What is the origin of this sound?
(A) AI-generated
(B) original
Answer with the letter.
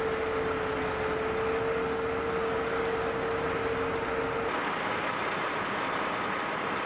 B